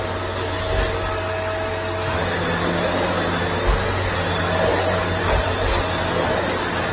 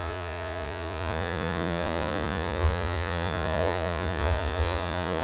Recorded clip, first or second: first